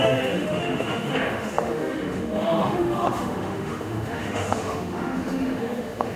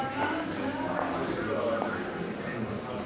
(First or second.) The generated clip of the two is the first